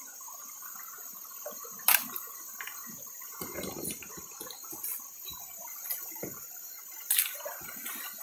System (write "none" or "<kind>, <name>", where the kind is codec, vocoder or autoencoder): none